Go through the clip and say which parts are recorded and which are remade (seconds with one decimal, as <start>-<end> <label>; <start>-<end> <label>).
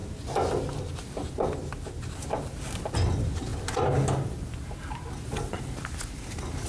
0.0-6.7 recorded